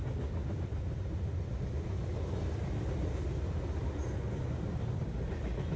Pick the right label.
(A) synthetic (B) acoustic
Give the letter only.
B